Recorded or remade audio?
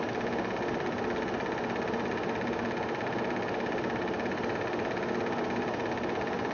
recorded